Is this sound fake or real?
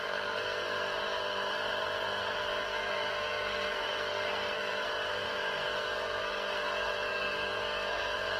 fake